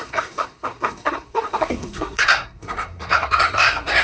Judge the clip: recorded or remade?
remade